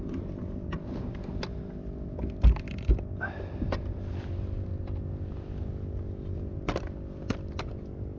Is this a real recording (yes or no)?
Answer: yes